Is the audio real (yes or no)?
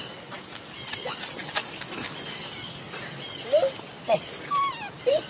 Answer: yes